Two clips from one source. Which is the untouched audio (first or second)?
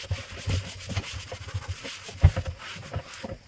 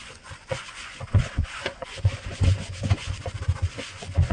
first